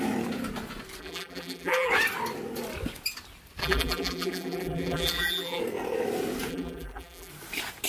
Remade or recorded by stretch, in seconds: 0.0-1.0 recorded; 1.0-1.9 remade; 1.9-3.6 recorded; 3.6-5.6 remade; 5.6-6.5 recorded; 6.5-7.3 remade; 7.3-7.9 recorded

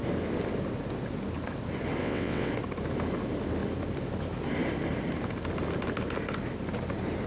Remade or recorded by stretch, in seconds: 0.0-2.0 recorded; 2.0-2.5 remade; 2.5-7.3 recorded

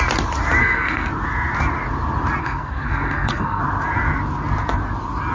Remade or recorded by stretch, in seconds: 0.0-0.6 recorded; 0.6-1.1 remade; 1.1-2.4 recorded; 2.4-3.6 remade; 3.6-5.3 recorded

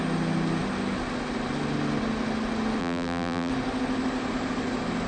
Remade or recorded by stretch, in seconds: 0.0-2.8 recorded; 2.8-3.5 remade; 3.5-5.1 recorded

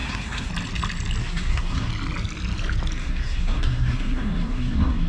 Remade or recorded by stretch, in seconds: 0.0-0.5 remade; 0.5-1.2 recorded; 1.2-1.9 remade; 1.9-3.0 recorded; 3.0-5.1 remade

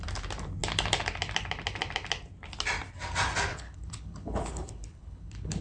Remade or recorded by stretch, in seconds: 0.0-3.5 recorded; 3.5-5.6 remade

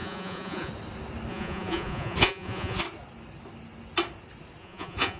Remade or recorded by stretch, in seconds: 0.0-0.7 remade; 0.7-1.3 recorded; 1.3-2.8 remade; 2.8-4.6 recorded; 4.6-5.2 remade

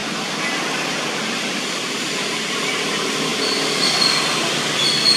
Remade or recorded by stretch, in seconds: 0.0-5.2 recorded